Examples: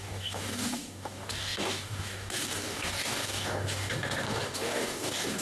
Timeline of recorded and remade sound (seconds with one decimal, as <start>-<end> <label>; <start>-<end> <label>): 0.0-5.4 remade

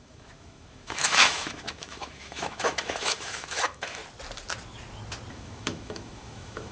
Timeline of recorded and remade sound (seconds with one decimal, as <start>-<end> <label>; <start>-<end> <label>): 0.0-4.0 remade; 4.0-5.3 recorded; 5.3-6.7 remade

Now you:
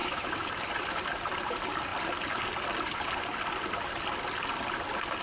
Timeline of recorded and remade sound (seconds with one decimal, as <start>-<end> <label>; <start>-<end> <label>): 0.0-0.5 remade; 0.5-5.2 recorded